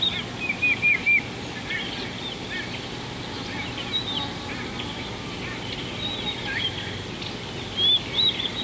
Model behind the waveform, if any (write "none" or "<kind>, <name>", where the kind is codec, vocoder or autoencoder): none